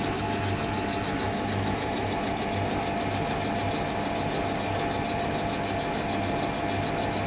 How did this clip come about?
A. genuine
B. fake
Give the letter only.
A